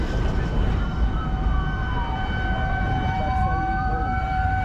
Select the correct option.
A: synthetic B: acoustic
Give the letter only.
A